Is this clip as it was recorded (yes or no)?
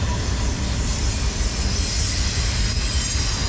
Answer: yes